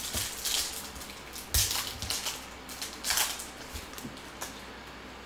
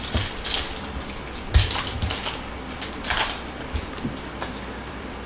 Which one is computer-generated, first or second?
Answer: second